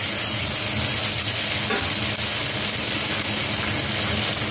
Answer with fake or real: real